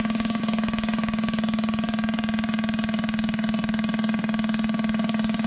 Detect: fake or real real